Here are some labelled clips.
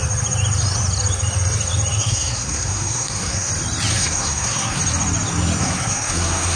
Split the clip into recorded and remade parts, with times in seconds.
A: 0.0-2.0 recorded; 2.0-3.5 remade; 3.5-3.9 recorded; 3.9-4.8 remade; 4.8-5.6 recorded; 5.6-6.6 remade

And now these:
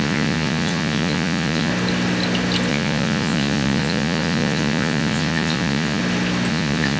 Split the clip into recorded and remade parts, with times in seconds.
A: 0.0-1.7 remade; 1.7-2.7 recorded; 2.7-6.0 remade; 6.0-6.5 recorded; 6.5-7.0 remade

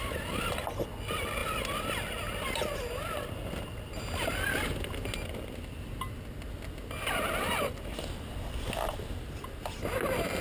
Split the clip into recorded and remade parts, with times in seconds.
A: 0.0-10.4 recorded

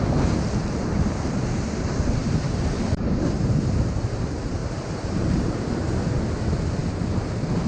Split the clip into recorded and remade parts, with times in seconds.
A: 0.0-2.2 recorded; 2.2-3.7 remade; 3.7-4.6 recorded; 4.6-5.8 remade; 5.8-7.7 recorded

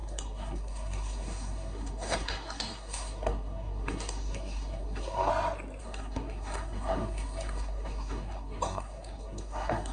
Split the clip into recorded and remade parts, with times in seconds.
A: 0.0-5.3 remade; 5.3-5.8 recorded; 5.8-9.9 remade

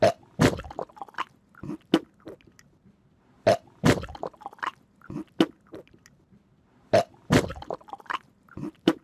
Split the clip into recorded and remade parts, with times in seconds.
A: 0.0-7.5 recorded; 7.5-9.0 remade